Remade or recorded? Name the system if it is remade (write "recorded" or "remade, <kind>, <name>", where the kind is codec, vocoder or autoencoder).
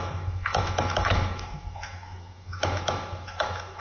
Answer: remade, autoencoder, DAC-VAE